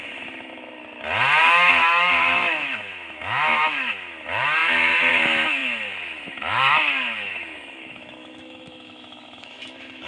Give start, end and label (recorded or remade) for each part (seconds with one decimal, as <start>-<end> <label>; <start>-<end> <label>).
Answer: 0.0-0.8 remade; 0.8-1.4 recorded; 1.4-10.1 remade